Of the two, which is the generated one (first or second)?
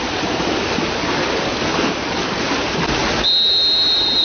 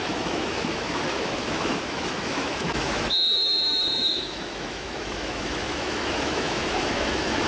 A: second